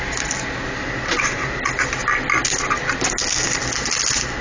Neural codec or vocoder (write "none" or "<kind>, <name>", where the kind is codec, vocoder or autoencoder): none